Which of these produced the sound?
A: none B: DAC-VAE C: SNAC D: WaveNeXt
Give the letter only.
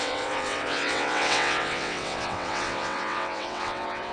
D